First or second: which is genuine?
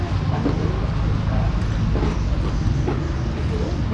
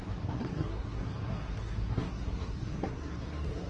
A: first